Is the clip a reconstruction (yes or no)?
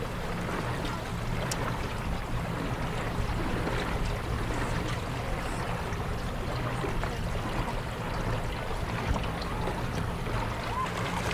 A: no